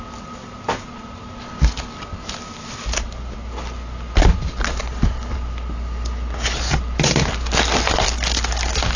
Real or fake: real